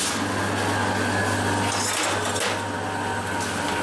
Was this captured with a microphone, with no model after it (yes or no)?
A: yes